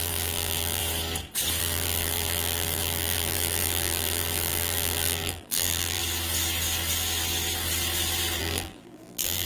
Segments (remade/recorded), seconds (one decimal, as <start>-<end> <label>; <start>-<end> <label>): 0.0-0.8 remade; 0.8-1.6 recorded; 1.6-6.0 remade; 6.0-8.4 recorded; 8.4-9.5 remade